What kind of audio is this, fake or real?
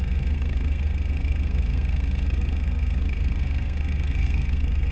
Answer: fake